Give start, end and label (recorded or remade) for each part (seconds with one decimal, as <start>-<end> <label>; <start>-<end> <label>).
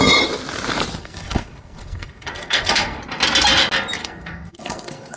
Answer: 0.0-1.0 recorded; 1.0-3.0 remade; 3.0-4.0 recorded; 4.0-5.2 remade